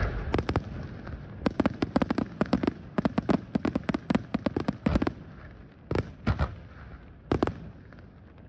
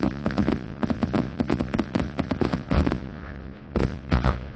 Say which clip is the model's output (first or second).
second